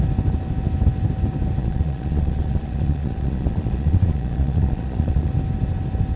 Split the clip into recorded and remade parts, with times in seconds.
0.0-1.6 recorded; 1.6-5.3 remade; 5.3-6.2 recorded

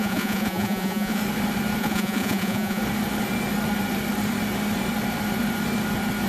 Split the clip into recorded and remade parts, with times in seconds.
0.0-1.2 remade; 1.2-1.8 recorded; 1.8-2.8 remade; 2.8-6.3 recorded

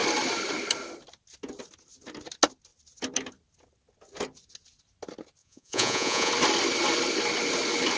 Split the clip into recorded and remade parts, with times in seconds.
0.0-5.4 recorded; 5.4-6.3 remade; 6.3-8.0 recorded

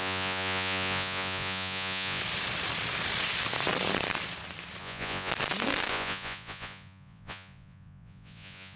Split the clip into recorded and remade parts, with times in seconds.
0.0-2.2 remade; 2.2-4.8 recorded; 4.8-5.3 remade; 5.3-5.9 recorded; 5.9-8.8 remade

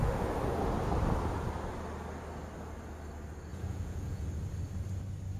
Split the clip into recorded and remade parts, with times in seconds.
0.0-3.5 recorded; 3.5-4.3 remade; 4.3-5.4 recorded

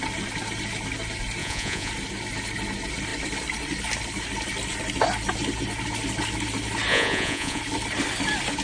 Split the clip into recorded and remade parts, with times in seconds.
0.0-1.4 recorded; 1.4-1.9 remade; 1.9-6.9 recorded; 6.9-7.6 remade; 7.6-8.6 recorded

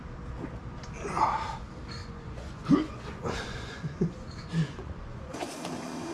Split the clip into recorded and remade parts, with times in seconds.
0.0-2.0 recorded; 2.0-6.1 remade

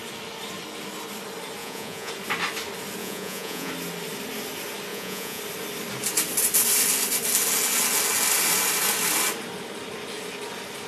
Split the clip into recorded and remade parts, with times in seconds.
0.0-1.6 recorded; 1.6-2.1 remade; 2.1-3.0 recorded; 3.0-3.7 remade; 3.7-4.9 recorded; 4.9-5.4 remade; 5.4-10.9 recorded